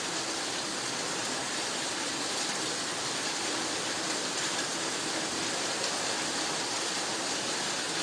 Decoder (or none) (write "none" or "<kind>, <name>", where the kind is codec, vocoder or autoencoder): none